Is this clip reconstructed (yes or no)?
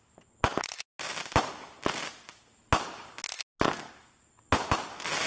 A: no